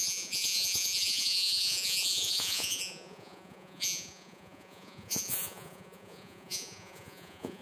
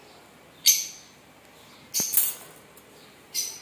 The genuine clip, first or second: second